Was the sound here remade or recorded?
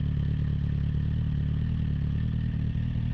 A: recorded